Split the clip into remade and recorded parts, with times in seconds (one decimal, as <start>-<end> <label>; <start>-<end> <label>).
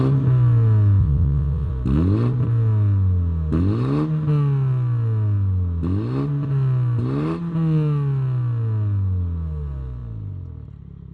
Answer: 0.0-1.0 recorded; 1.0-1.7 remade; 1.7-11.1 recorded